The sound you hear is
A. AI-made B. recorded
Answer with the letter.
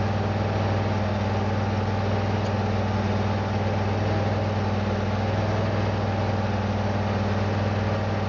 B